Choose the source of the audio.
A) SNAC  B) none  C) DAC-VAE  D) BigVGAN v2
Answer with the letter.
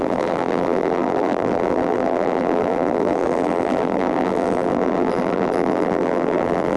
D